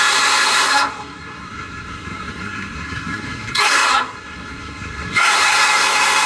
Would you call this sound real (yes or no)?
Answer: no